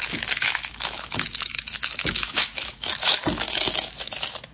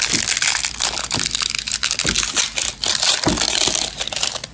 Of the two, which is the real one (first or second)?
second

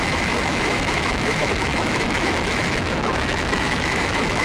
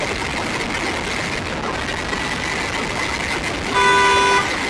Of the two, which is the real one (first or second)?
second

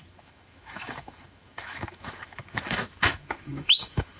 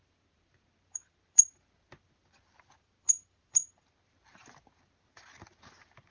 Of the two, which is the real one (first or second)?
second